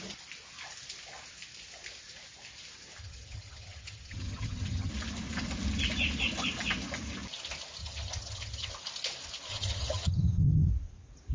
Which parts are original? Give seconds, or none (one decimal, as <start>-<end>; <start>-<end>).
0.0-3.0; 4.9-7.8; 8.7-9.5; 10.7-11.3